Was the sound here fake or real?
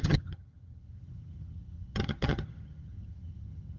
fake